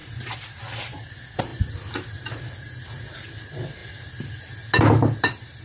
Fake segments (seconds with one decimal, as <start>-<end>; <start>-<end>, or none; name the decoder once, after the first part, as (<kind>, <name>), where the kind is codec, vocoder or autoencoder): none